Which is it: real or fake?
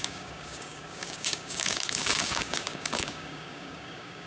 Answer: fake